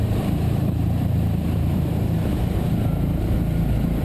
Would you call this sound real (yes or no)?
no